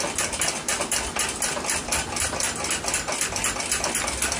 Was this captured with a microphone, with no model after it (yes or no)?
yes